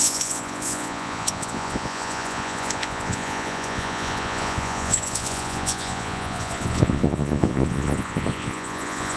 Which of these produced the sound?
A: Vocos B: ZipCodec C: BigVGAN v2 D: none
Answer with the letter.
A